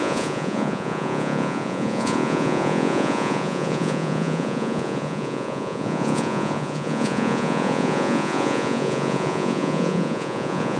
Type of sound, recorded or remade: remade